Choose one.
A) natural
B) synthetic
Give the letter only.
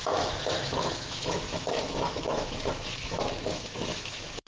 B